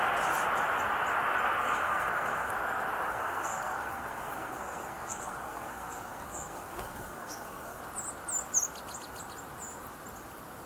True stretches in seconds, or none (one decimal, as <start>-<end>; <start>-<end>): 0.0-1.6; 2.5-3.1; 7.8-10.7

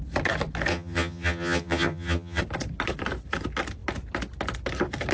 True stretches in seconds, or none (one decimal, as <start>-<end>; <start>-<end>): 0.0-0.7; 2.4-5.1